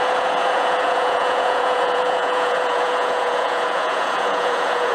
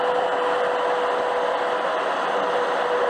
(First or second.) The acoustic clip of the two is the second